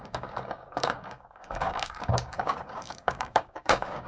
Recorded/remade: remade